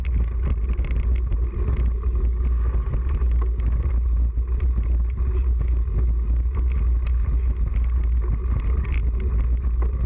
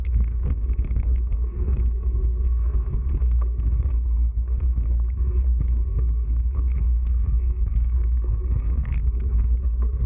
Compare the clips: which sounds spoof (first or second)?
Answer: second